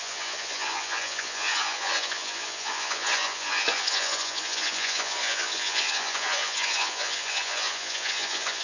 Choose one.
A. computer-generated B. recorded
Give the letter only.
A